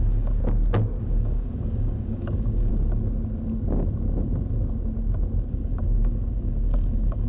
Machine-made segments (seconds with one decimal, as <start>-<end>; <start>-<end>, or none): 0.0-0.4; 1.0-2.7; 5.5-7.3